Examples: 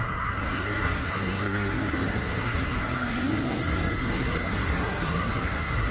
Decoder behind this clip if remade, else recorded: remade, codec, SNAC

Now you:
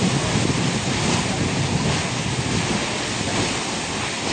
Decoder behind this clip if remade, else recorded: recorded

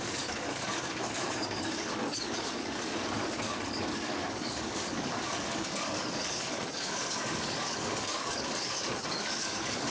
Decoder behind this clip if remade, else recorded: remade, codec, DAC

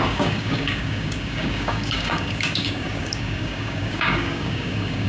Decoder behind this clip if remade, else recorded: remade, codec, DAC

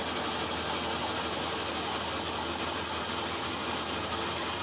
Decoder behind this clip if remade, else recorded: recorded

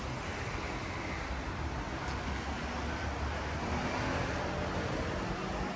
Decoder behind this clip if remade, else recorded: recorded